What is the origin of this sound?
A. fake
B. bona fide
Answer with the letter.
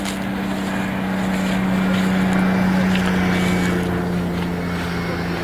B